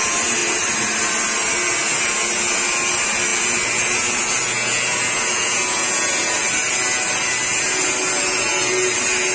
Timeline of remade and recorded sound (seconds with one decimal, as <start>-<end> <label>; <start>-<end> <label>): 0.0-0.4 recorded; 0.4-1.0 remade; 1.0-9.3 recorded

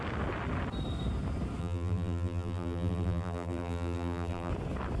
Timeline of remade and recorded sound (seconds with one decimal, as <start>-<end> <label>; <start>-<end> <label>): 0.0-1.6 recorded; 1.6-4.5 remade; 4.5-5.0 recorded

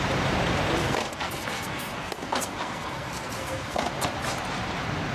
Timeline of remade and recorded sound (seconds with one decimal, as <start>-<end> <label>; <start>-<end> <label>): 0.0-0.8 recorded; 0.8-3.9 remade; 3.9-5.1 recorded

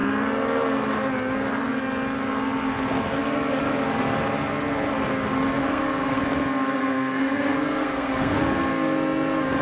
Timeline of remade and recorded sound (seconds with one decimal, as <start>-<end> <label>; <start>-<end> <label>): 0.0-5.6 recorded; 5.6-6.2 remade; 6.2-6.8 recorded; 6.8-8.4 remade; 8.4-9.6 recorded

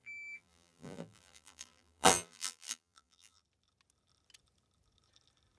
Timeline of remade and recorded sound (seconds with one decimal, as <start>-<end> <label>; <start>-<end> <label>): 0.0-3.4 remade; 3.4-5.6 recorded

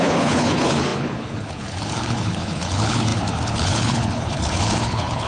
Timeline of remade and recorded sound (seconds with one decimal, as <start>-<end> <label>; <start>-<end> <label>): 0.0-5.3 remade